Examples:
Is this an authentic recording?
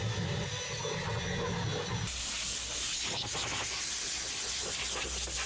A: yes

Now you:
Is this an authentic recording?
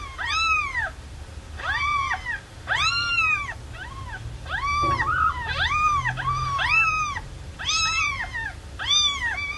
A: yes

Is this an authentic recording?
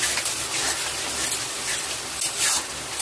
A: yes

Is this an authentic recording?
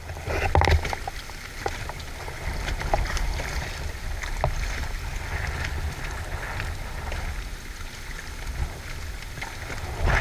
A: yes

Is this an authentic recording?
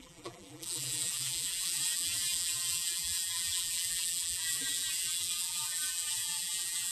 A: no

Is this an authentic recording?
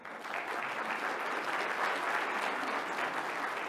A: yes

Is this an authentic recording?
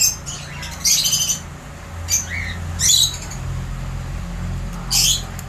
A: yes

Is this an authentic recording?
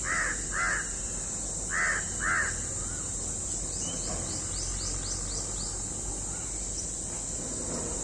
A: yes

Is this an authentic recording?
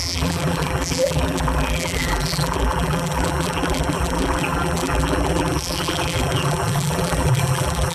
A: no